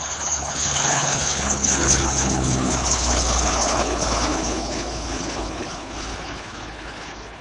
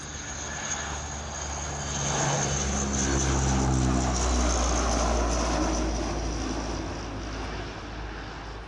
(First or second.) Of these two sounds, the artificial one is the first